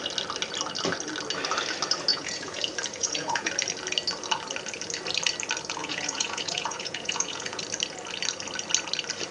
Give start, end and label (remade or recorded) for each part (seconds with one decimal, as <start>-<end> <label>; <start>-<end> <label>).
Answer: 0.0-2.1 recorded; 2.1-2.6 remade; 2.6-3.0 recorded; 3.0-3.5 remade; 3.5-5.8 recorded; 5.8-7.6 remade; 7.6-9.3 recorded